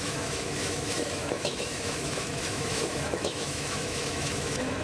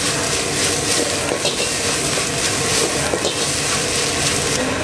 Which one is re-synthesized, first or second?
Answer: first